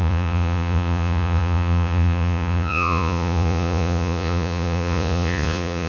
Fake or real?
fake